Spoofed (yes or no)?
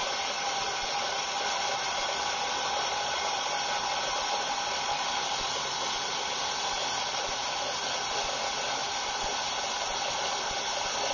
no